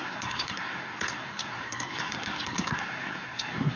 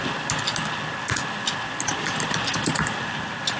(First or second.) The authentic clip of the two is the second